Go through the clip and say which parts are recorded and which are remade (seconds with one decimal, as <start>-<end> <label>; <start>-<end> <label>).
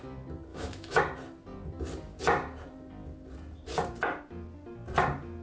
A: 0.0-0.5 recorded; 0.5-1.0 remade; 1.0-5.4 recorded